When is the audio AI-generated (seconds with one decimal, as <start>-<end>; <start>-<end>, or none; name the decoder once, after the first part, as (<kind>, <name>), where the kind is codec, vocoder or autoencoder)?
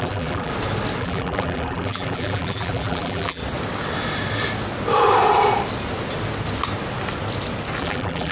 0.0-0.5 (vocoder, BigVGAN v2); 1.0-3.4; 7.8-8.3